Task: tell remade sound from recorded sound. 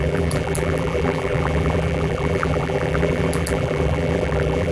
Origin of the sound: remade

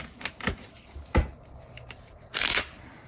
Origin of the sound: remade